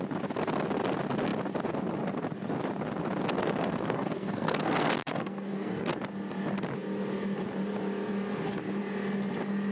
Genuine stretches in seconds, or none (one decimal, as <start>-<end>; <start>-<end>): 0.0-3.4; 5.9-9.7